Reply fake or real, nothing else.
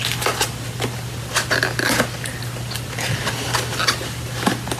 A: real